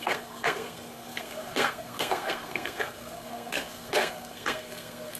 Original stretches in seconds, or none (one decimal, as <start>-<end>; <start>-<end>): none